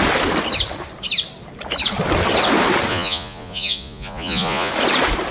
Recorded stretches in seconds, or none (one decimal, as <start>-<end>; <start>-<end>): 0.0-2.9; 4.7-5.3